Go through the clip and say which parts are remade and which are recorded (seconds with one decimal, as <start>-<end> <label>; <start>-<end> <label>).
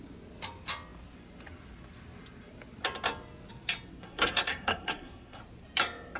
0.0-4.0 recorded; 4.0-5.4 remade; 5.4-6.2 recorded